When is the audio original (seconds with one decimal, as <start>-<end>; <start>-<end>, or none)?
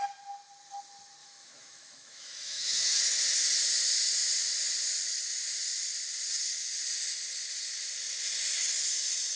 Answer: 0.0-1.2; 3.0-9.4